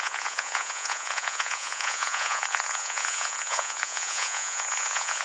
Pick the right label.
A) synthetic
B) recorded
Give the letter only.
A